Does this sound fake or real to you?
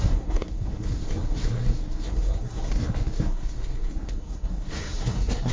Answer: fake